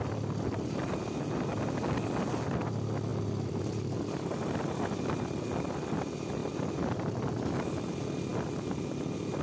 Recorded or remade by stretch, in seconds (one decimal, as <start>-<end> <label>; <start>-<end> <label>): 0.0-6.4 recorded; 6.4-7.8 remade; 7.8-9.4 recorded